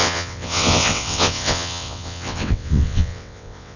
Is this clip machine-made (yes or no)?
yes